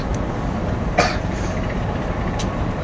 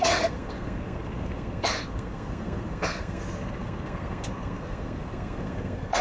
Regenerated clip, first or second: second